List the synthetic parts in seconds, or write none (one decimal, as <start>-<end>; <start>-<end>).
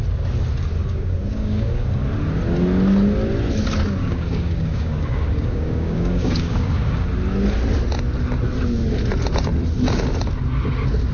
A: 0.8-2.0; 4.0-7.1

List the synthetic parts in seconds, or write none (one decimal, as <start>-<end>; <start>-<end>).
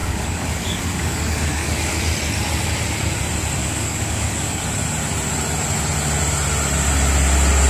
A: 0.0-2.0; 3.6-4.6